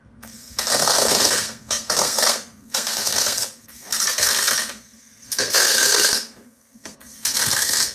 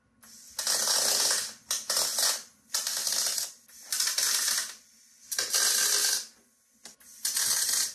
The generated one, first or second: first